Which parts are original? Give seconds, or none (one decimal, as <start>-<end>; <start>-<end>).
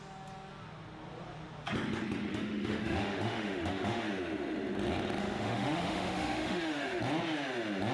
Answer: 0.0-2.3; 4.1-5.2; 7.0-7.9